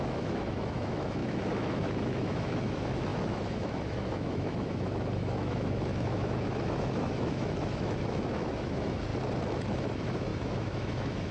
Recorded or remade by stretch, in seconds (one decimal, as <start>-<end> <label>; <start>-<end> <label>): 0.0-9.1 remade; 9.1-9.7 recorded; 9.7-11.3 remade